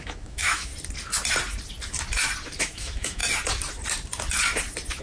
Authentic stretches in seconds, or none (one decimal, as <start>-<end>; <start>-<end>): 0.7-2.6; 3.2-5.0